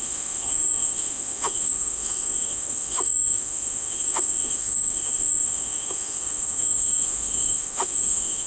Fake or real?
fake